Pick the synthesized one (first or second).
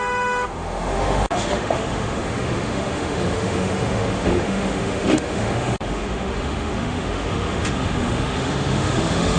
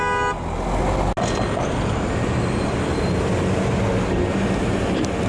first